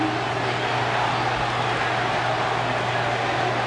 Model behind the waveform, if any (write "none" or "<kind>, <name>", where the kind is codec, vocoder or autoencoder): none